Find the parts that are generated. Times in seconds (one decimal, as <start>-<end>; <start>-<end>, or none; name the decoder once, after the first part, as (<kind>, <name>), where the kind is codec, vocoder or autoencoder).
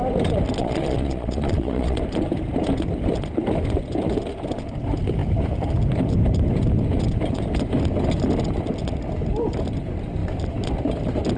0.6-2.0 (vocoder, Vocos)